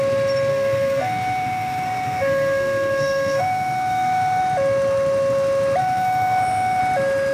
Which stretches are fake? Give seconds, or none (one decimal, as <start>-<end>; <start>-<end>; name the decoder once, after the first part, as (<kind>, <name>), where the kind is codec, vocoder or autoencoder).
0.5-4.4 (codec, SNAC); 5.8-6.8